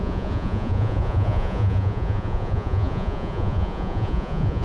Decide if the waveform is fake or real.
fake